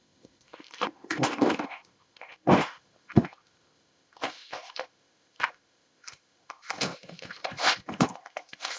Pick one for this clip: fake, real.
fake